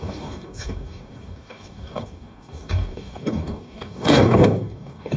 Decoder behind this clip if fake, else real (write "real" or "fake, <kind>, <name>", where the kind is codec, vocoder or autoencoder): fake, codec, DAC